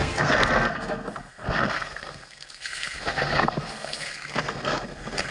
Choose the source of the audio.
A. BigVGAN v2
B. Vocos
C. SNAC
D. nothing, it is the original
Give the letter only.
C